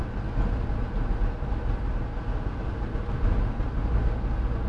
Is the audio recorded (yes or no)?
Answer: yes